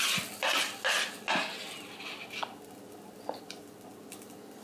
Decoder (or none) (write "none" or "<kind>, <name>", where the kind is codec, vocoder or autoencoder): none